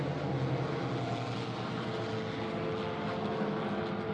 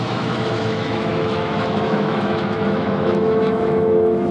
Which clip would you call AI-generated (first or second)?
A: second